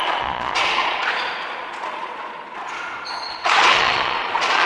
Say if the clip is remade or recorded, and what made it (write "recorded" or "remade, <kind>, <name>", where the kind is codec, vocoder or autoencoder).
remade, vocoder, Vocos